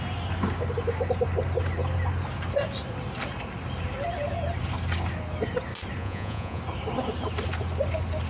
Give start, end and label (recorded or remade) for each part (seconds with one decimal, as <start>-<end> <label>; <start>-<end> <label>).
0.0-6.0 recorded; 6.0-6.6 remade; 6.6-8.3 recorded